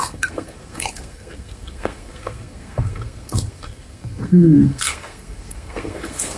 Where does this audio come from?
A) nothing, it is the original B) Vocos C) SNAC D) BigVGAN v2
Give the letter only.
C